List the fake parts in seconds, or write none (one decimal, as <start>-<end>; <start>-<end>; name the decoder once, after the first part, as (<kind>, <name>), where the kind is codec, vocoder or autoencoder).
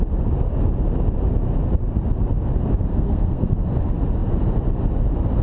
2.9-3.5 (codec, SNAC)